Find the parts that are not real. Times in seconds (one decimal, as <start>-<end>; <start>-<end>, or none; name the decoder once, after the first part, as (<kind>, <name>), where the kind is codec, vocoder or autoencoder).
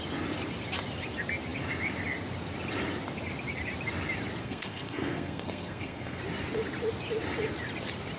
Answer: 4.4-6.2 (codec, SNAC)